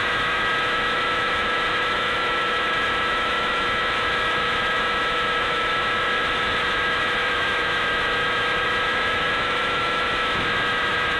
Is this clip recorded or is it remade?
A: remade